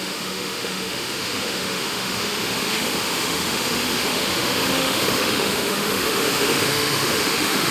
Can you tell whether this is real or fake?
fake